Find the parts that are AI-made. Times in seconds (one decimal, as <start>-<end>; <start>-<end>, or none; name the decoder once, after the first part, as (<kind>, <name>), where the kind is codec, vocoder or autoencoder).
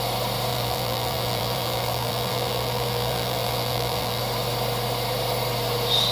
0.5-4.2 (vocoder, BigVGAN v2)